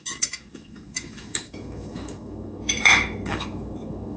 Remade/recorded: remade